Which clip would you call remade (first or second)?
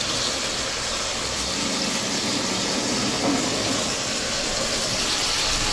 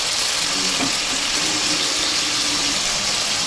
first